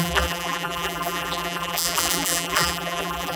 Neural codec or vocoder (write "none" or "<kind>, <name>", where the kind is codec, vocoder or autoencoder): vocoder, BigVGAN v2